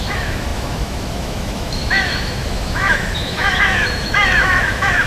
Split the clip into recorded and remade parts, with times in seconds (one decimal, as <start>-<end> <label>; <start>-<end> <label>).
0.0-5.1 remade